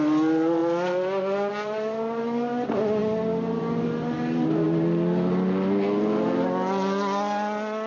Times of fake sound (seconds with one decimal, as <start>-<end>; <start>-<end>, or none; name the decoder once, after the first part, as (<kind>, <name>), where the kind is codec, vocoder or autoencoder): none